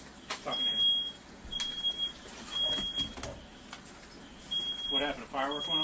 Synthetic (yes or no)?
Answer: no